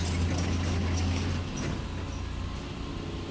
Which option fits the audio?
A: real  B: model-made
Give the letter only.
A